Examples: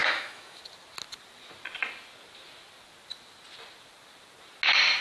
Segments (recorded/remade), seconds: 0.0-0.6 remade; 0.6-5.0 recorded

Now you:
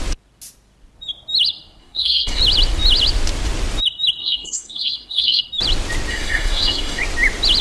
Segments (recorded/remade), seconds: 0.0-1.8 recorded; 1.8-2.4 remade; 2.4-4.2 recorded; 4.2-5.4 remade; 5.4-6.1 recorded; 6.1-7.0 remade; 7.0-7.6 recorded

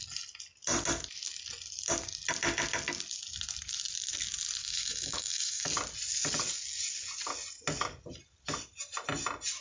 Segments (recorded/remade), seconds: 0.0-4.6 recorded; 4.6-5.6 remade; 5.6-9.6 recorded